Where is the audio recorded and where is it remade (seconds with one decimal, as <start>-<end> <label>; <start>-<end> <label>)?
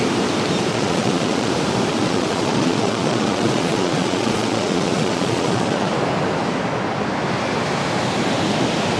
0.0-0.7 recorded; 0.7-1.5 remade; 1.5-1.9 recorded; 1.9-5.9 remade; 5.9-9.0 recorded